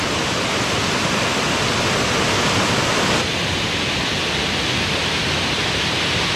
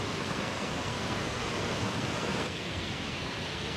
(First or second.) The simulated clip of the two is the second